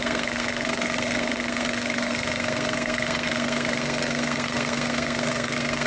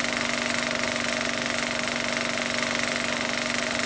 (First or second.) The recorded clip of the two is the second